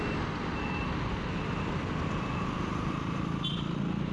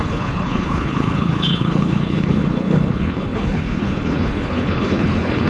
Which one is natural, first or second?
first